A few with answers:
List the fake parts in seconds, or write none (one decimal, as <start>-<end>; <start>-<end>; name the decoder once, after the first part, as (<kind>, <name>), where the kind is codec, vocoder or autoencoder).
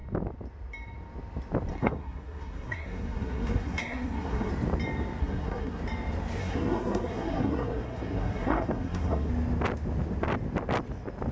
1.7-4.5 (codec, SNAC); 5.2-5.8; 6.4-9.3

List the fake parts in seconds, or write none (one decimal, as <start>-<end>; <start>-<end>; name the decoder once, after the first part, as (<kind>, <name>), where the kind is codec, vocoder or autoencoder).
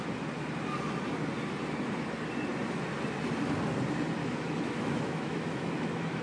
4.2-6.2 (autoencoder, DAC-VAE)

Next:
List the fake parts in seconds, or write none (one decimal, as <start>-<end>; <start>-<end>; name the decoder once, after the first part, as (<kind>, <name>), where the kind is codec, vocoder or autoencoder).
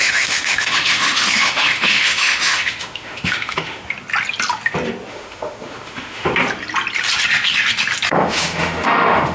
0.0-3.8 (autoencoder, DAC-VAE); 5.1-6.3; 8.1-9.3